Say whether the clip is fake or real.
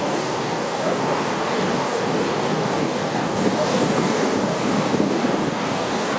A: fake